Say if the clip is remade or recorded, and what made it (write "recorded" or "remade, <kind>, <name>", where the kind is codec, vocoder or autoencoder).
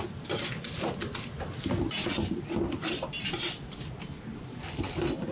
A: recorded